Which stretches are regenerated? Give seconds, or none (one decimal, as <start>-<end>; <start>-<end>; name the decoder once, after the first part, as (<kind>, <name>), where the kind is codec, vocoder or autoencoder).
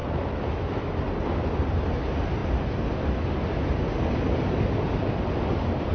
0.0-1.0 (autoencoder, DAC-VAE)